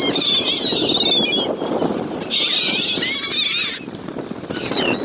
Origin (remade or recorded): recorded